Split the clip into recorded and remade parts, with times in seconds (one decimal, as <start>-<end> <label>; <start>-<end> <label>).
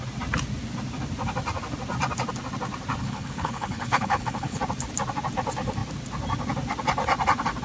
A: 0.0-3.0 recorded; 3.0-4.6 remade; 4.6-7.6 recorded